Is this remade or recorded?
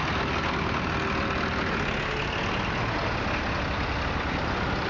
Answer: recorded